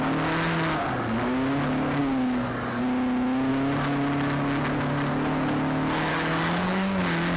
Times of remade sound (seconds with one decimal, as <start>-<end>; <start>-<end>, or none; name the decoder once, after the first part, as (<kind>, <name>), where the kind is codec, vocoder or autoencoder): 2.0-2.8 (codec, DAC); 6.1-7.0